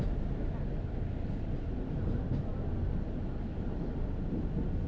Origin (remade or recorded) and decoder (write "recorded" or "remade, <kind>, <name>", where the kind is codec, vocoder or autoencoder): recorded